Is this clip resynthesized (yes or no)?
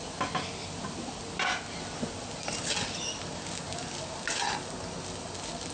no